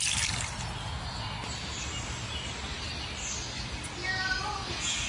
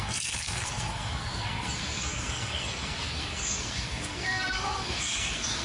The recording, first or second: first